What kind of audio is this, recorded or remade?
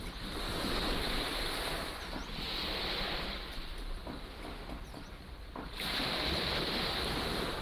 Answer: recorded